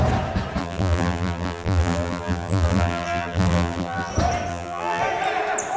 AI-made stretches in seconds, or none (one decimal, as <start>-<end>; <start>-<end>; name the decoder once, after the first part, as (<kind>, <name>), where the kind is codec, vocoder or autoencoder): 0.6-4.1 (vocoder, BigVGAN v2); 4.5-5.0